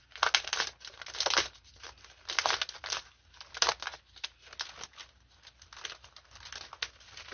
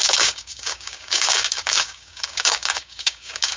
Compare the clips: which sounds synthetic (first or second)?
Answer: second